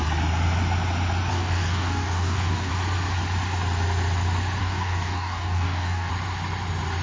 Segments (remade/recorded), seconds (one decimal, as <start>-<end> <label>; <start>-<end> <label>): 0.0-1.3 recorded; 1.3-2.7 remade; 2.7-4.6 recorded; 4.6-6.1 remade; 6.1-7.0 recorded